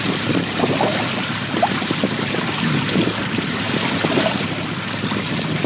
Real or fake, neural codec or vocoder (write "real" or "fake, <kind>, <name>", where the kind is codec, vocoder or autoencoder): real